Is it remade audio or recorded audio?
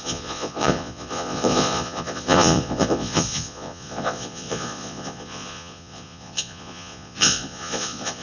remade